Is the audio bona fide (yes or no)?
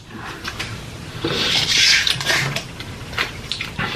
no